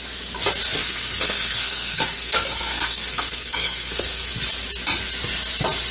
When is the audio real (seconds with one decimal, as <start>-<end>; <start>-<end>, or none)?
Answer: 0.0-0.8; 4.3-5.9